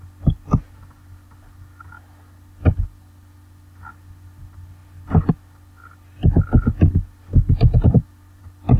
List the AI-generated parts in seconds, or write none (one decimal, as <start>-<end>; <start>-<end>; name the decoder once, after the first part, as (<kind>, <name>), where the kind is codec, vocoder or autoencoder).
none